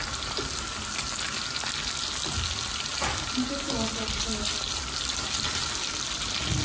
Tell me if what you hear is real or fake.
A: real